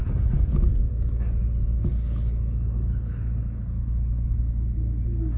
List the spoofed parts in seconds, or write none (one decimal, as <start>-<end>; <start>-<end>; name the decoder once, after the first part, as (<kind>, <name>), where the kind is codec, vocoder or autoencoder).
1.7-4.4 (codec, HILCodec)